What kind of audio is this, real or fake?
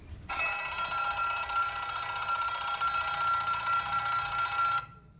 real